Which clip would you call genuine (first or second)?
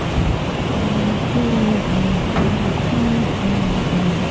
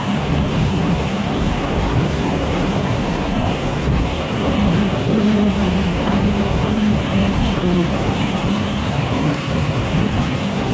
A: first